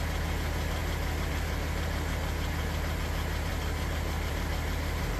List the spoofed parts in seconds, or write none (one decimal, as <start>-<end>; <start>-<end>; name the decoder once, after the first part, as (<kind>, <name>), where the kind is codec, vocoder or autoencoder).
none